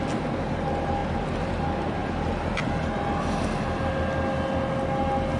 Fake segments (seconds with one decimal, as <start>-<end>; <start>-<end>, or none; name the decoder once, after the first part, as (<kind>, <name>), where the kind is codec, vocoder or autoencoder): none